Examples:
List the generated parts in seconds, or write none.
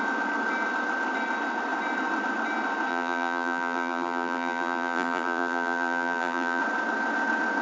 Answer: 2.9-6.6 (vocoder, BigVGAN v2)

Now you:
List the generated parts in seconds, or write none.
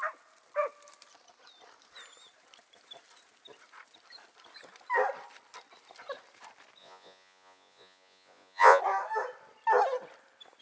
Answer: 6.8-8.8 (vocoder, Vocos)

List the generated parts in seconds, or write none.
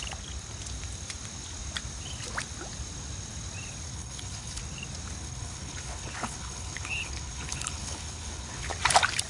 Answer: 3.9-4.6 (codec, HILCodec); 5.2-8.7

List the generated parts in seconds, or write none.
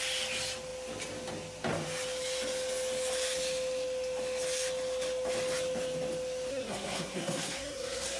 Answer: 6.5-8.2 (codec, SNAC)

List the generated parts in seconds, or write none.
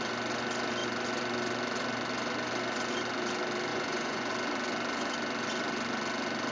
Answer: 3.7-4.3 (vocoder, Vocos)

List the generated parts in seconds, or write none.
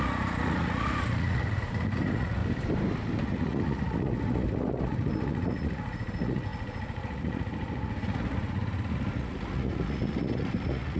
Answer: 0.0-2.4 (vocoder, Vocos); 3.2-11.0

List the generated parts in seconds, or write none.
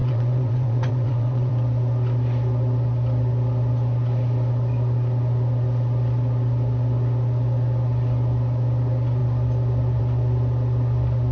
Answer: 0.0-1.5 (vocoder, WaveNeXt)